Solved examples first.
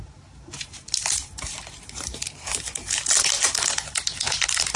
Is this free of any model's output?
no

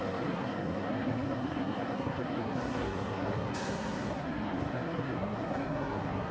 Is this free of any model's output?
no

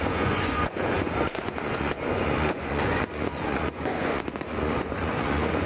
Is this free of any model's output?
no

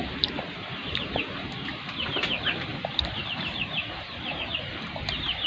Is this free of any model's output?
no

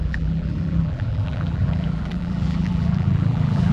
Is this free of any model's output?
no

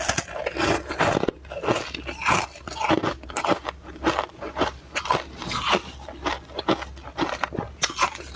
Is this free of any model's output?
yes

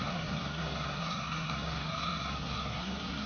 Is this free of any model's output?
no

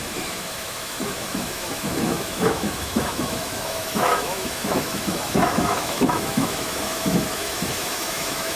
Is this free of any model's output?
no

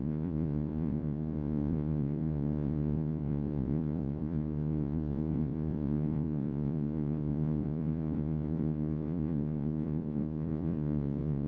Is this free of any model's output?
no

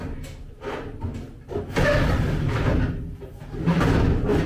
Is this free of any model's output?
yes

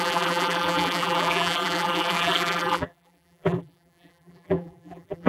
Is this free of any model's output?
no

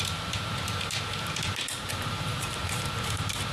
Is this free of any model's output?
no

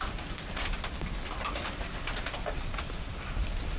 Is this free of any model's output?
no